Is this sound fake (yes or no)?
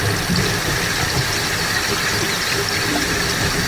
no